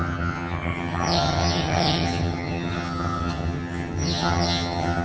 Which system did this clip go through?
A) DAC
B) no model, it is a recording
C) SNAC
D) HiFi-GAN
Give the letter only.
D